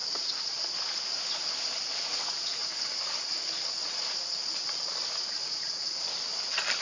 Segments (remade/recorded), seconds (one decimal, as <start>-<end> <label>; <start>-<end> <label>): 0.0-2.0 recorded; 2.0-2.6 remade; 2.6-6.8 recorded